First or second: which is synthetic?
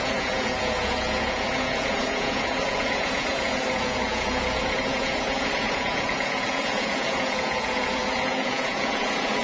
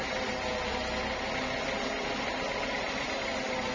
first